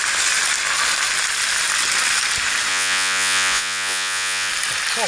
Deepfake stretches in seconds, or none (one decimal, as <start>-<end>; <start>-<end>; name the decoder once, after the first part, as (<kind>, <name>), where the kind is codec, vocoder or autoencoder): 2.7-4.5 (vocoder, Vocos)